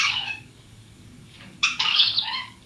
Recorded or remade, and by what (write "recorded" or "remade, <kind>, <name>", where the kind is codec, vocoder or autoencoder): remade, codec, DAC